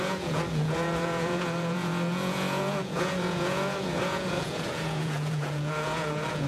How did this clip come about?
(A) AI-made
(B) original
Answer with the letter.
A